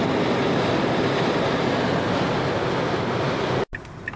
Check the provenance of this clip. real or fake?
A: real